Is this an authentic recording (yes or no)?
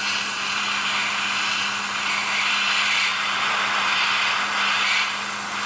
yes